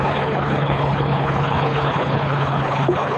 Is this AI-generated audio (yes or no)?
yes